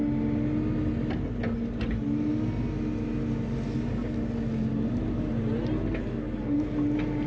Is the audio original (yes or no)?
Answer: yes